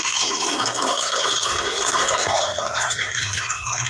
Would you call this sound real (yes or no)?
no